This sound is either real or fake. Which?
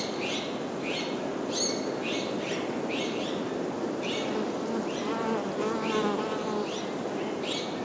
real